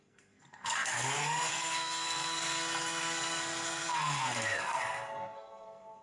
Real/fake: fake